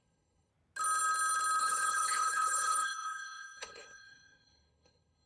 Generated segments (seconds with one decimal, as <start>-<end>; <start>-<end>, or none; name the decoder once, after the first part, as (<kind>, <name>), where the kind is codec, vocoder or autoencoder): 0.0-0.5 (codec, HILCodec); 1.6-5.3